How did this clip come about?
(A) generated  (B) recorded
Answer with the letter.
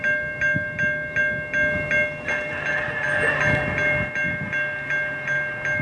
B